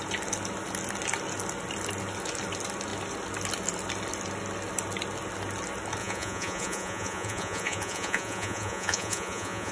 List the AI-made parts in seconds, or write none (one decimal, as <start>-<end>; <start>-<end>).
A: 6.0-9.7